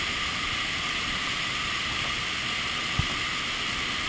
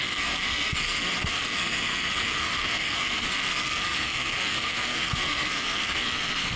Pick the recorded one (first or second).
first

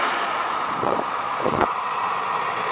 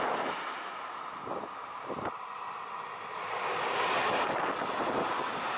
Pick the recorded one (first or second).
second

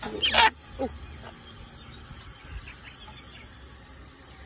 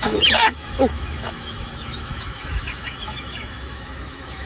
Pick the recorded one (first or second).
first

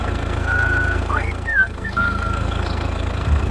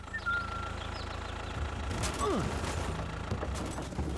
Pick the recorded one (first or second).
second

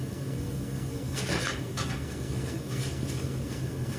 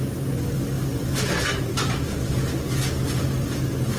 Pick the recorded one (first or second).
second